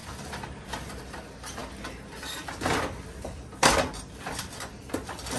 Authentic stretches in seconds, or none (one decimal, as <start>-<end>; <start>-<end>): 0.6-5.4